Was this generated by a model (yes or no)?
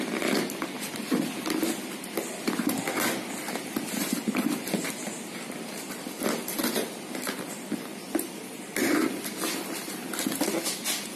no